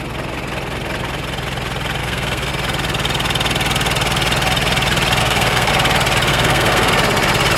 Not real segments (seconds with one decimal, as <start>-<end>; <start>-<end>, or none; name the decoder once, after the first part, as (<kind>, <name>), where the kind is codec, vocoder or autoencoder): 2.0-2.5 (codec, SNAC); 5.2-5.7; 6.3-6.9